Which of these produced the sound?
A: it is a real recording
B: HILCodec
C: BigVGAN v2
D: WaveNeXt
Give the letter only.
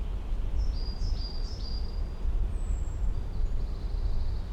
A